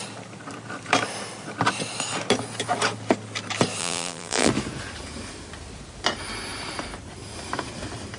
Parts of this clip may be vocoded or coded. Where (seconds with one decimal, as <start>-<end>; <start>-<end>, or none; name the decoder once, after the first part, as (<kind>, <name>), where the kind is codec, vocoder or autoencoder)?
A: 3.8-4.5 (vocoder, BigVGAN v2)